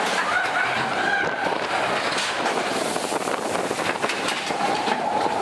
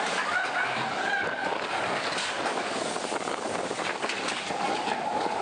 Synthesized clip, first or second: second